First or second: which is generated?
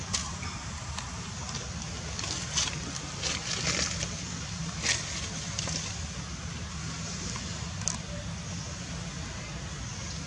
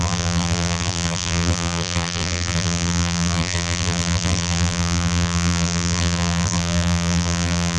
second